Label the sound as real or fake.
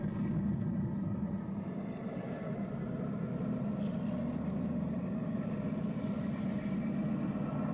real